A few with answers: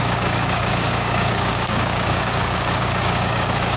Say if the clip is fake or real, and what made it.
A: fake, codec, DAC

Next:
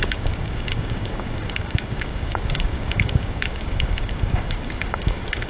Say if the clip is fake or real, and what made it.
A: fake, codec, DAC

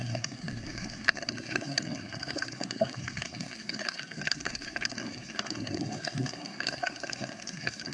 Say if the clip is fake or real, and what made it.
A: fake, codec, SNAC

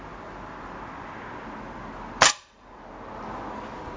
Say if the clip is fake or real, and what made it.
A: real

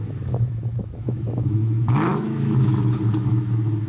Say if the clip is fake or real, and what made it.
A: fake, autoencoder, DAC-VAE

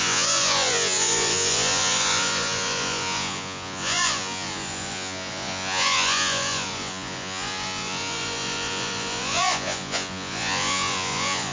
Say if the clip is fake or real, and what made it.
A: fake, vocoder, Vocos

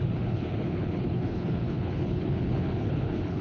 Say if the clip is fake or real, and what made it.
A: fake, codec, HILCodec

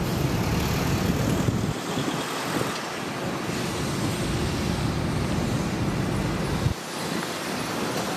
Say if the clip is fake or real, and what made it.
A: real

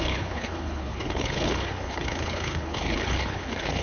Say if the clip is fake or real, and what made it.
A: fake, codec, HILCodec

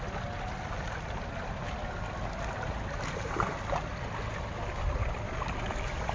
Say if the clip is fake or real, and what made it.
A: real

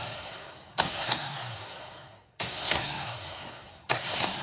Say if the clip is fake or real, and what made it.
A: fake, codec, SNAC